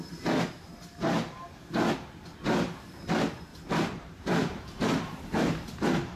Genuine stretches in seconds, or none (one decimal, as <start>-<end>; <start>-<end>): 0.0-3.5; 4.8-6.2